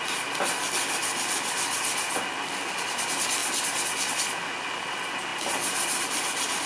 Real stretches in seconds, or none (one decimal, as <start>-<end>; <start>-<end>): 0.0-6.7